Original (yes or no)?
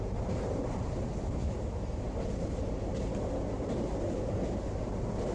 yes